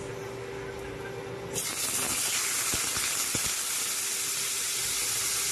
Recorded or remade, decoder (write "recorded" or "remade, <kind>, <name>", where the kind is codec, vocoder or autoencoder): recorded